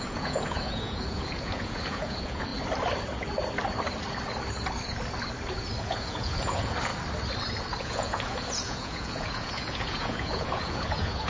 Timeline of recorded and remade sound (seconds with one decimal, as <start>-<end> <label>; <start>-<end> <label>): 0.0-2.5 remade; 2.5-5.8 recorded; 5.8-6.9 remade; 6.9-7.8 recorded; 7.8-11.3 remade